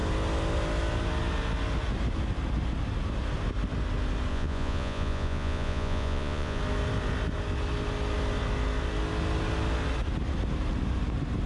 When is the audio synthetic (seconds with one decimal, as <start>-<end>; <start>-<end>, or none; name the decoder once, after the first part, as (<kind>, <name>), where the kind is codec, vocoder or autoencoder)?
4.3-6.6 (vocoder, Vocos)